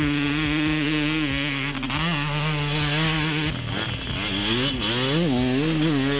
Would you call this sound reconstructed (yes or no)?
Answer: no